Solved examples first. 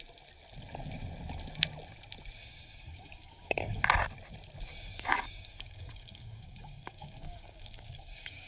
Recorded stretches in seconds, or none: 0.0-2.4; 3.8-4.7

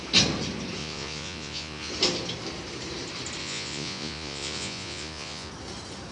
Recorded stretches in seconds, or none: 0.0-0.8; 1.9-3.4; 5.5-6.1

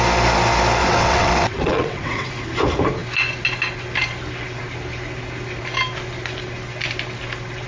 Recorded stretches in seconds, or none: 0.0-0.8; 2.3-7.7

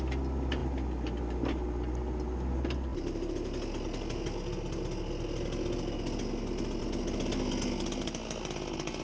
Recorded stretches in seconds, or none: 0.0-9.0